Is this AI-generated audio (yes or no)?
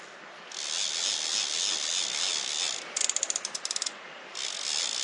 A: no